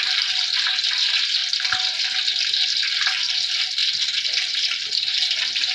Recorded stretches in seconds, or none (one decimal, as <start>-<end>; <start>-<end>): 1.4-2.8; 3.8-4.4